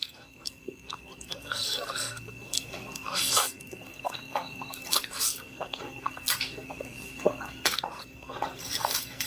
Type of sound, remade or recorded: remade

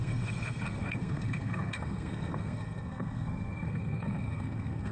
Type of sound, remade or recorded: remade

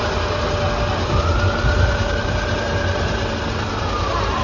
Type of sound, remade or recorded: recorded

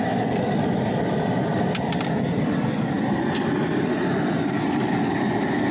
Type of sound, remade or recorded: recorded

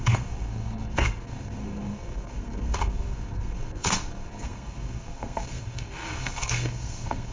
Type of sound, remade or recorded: remade